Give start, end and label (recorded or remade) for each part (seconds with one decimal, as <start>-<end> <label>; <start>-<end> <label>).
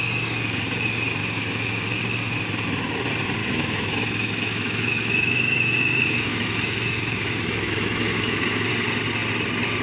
0.0-1.2 recorded; 1.2-2.0 remade; 2.0-3.4 recorded; 3.4-8.7 remade; 8.7-9.8 recorded